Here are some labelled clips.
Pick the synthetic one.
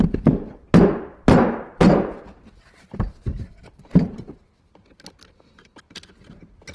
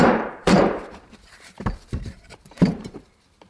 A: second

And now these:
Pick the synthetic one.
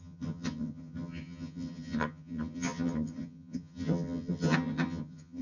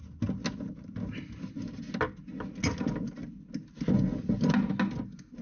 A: first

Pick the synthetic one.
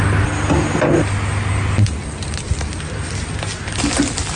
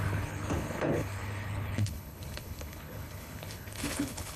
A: second